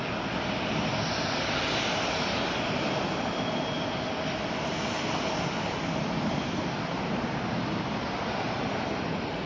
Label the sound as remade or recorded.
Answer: recorded